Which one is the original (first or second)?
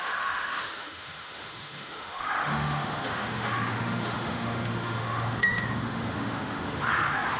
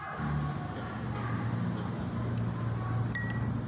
second